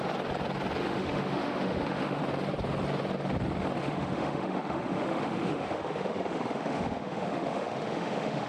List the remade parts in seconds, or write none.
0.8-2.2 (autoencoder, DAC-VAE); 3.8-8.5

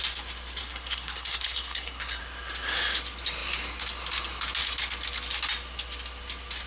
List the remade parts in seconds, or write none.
0.6-2.2 (codec, SNAC)

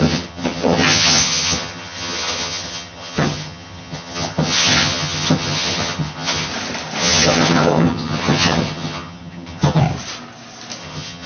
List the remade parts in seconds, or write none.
0.0-6.5 (vocoder, HiFi-GAN); 7.0-9.8; 10.8-11.3

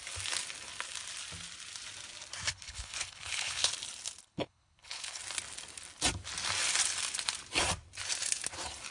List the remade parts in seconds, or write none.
2.5-3.7 (codec, HILCodec); 4.2-5.2